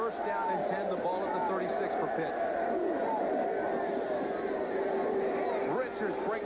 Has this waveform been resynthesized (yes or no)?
no